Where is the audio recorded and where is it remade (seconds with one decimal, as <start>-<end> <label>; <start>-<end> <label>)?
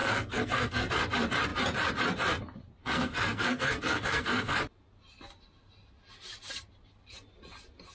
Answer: 0.0-0.9 remade; 0.9-2.8 recorded; 2.8-4.6 remade; 4.6-7.9 recorded